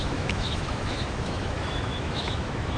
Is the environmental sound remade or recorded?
remade